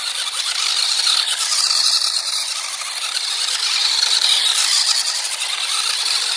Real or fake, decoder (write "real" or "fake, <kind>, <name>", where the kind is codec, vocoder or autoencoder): real